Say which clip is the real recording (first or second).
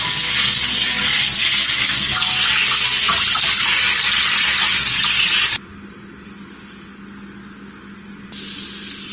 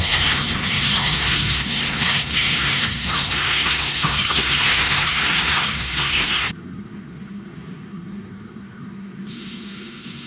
first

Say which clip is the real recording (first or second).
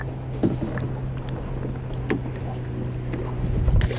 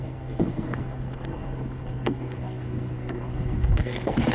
first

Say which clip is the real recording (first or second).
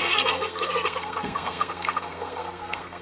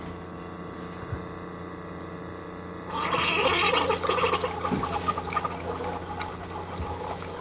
second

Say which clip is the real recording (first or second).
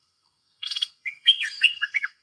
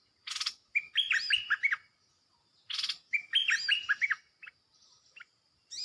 second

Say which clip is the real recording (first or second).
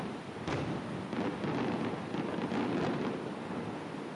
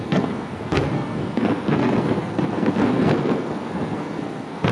first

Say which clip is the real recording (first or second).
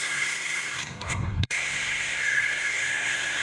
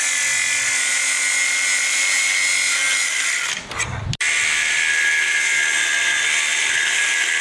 second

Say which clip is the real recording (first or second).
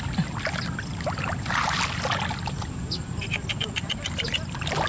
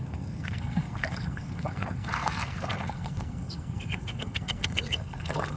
first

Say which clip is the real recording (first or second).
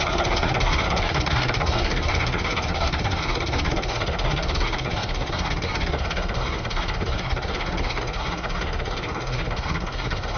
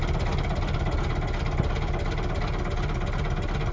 second